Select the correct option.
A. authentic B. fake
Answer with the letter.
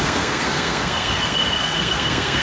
B